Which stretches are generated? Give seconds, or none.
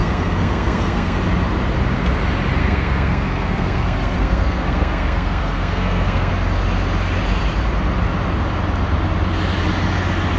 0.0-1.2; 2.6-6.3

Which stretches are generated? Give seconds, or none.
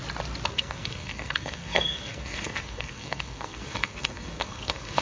0.5-5.0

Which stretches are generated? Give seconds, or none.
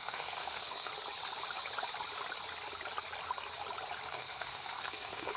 0.0-0.9; 4.1-5.4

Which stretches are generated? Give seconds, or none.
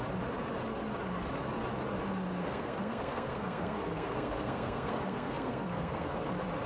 2.4-6.3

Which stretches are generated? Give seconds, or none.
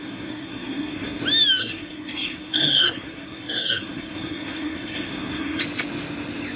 0.0-1.2; 1.6-5.6